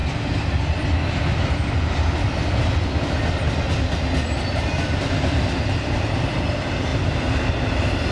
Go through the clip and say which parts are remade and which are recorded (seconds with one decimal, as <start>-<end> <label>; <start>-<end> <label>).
0.0-8.1 recorded